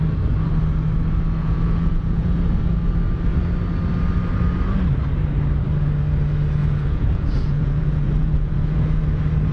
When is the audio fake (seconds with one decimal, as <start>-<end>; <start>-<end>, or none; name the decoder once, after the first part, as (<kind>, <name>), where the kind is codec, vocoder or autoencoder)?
1.4-2.6 (vocoder, Vocos); 6.6-9.0